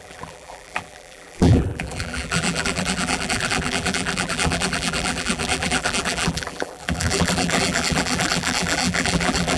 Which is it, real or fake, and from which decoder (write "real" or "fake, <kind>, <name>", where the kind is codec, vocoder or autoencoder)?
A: fake, vocoder, BigVGAN v2